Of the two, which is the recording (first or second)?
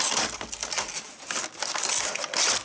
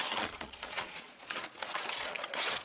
first